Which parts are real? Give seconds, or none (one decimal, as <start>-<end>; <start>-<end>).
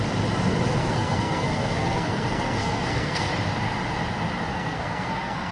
0.0-0.8; 3.3-4.5